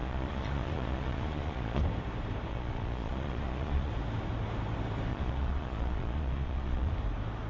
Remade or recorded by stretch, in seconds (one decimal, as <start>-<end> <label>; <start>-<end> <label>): 0.0-1.8 remade; 1.8-2.5 recorded; 2.5-3.9 remade; 3.9-5.1 recorded; 5.1-6.9 remade; 6.9-7.5 recorded